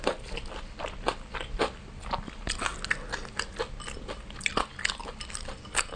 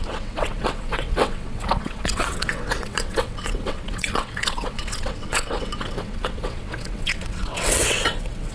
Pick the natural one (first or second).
first